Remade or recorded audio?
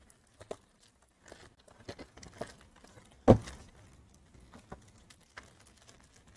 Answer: recorded